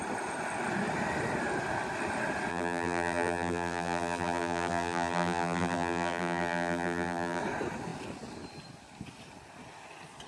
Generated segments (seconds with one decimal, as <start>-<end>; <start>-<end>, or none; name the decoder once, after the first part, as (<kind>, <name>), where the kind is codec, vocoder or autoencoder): 2.5-7.4 (vocoder, BigVGAN v2)